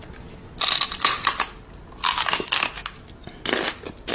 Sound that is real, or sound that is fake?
real